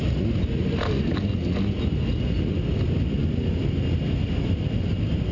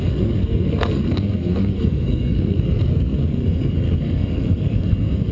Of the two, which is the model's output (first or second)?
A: second